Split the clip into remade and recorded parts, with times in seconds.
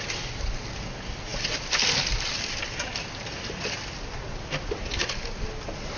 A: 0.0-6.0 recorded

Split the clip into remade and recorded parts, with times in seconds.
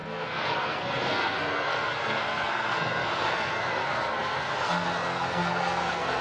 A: 0.0-6.2 remade